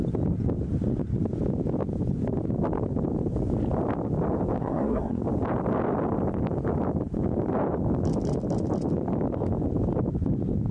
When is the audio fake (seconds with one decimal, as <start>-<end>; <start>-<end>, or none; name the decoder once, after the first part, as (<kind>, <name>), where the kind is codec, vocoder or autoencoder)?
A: 4.6-5.2 (codec, SNAC)